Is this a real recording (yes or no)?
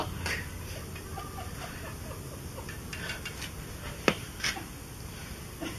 yes